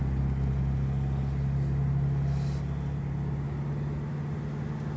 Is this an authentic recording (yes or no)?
yes